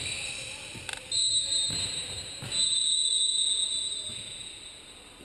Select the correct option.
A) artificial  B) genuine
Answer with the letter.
B